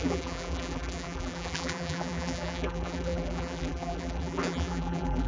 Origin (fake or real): fake